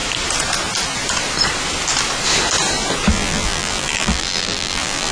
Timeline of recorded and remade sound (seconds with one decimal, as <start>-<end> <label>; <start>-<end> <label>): 0.0-3.1 recorded; 3.1-5.1 remade